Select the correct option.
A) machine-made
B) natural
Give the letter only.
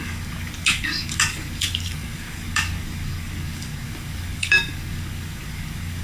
A